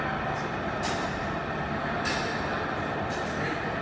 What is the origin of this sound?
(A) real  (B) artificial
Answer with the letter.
A